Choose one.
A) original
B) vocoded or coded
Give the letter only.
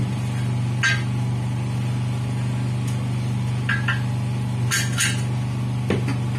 A